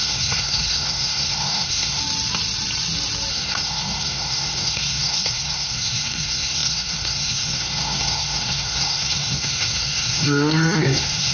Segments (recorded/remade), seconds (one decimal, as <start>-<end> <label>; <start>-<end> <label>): 0.0-2.0 remade; 2.0-3.3 recorded; 3.3-11.3 remade